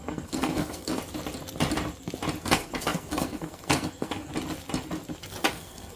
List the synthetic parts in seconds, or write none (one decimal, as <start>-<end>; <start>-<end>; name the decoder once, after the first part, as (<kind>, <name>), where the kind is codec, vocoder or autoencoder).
0.0-1.0 (codec, SNAC); 2.4-4.3; 5.5-6.0